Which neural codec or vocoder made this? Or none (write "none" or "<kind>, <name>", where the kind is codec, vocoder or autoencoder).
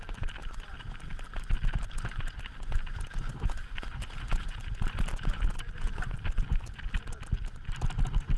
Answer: none